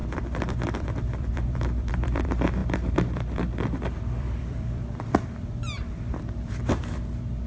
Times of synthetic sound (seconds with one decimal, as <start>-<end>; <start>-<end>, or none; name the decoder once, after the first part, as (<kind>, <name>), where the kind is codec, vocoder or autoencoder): 0.0-7.5 (vocoder, BigVGAN v2)